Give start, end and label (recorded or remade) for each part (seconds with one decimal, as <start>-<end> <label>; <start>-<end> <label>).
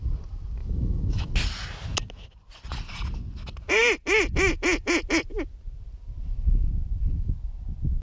0.0-0.6 recorded; 0.6-1.3 remade; 1.3-8.0 recorded